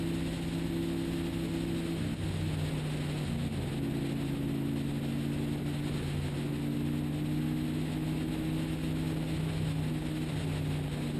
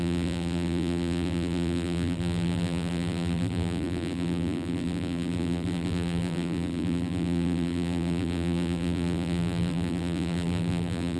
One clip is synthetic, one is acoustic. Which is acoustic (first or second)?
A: first